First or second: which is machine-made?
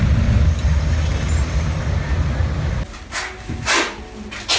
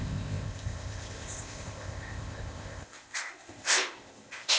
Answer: second